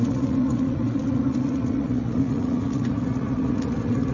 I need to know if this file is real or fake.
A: fake